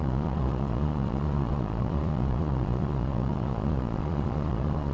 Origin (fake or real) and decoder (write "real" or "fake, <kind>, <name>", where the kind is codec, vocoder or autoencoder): fake, vocoder, Vocos